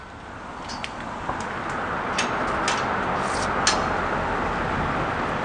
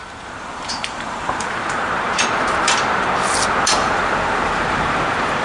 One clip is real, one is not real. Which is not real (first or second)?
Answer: second